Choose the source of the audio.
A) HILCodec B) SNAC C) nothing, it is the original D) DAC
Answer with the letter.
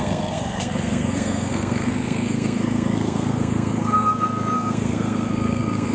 B